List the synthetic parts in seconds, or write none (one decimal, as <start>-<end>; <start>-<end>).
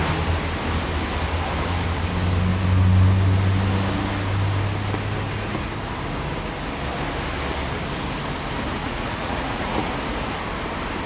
8.8-9.9